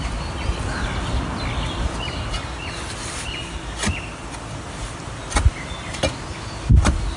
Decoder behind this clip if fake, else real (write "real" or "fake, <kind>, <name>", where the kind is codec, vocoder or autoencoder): real